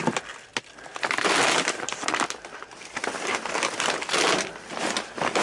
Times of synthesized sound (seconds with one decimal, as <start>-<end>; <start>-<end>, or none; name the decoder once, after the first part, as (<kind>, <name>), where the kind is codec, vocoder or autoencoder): 0.5-3.5 (vocoder, BigVGAN v2)